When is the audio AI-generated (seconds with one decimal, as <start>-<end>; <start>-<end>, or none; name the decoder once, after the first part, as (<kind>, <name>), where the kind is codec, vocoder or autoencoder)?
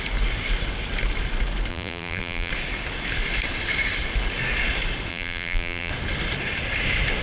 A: 1.7-2.5 (vocoder, BigVGAN v2); 5.1-5.9